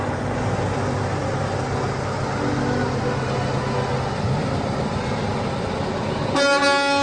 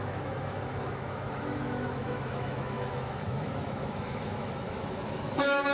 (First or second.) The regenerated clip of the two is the second